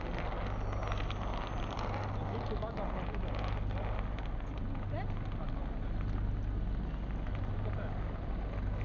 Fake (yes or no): no